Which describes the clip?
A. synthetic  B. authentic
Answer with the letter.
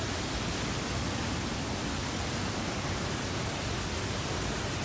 B